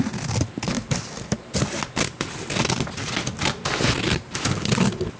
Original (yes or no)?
yes